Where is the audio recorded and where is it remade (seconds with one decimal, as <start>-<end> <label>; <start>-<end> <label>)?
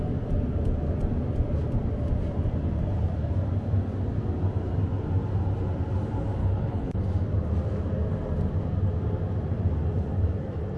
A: 0.0-6.4 recorded; 6.4-7.0 remade; 7.0-10.8 recorded